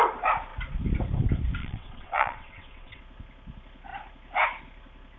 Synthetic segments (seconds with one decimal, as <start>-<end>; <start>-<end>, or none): 1.6-3.0